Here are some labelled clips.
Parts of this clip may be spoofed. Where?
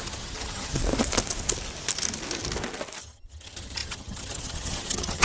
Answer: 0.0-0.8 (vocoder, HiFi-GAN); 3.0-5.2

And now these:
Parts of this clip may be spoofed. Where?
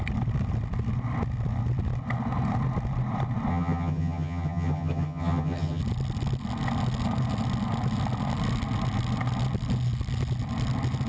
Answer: 3.5-5.8 (vocoder, HiFi-GAN)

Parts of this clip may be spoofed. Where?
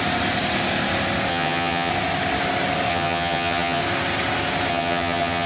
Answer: 1.3-1.9 (vocoder, HiFi-GAN); 2.9-3.8; 4.7-5.5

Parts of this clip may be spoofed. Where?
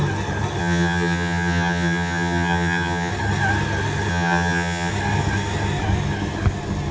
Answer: 0.6-3.1 (vocoder, HiFi-GAN); 4.1-4.9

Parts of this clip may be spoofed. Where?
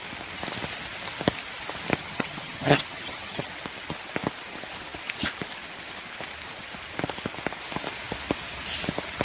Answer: 2.0-3.5 (vocoder, HiFi-GAN)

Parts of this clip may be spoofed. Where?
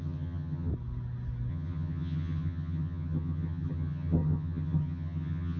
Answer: 0.0-0.7 (vocoder, HiFi-GAN); 1.5-5.6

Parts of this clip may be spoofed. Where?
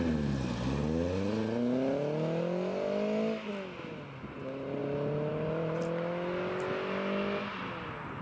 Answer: none